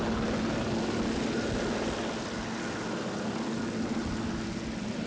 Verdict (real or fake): real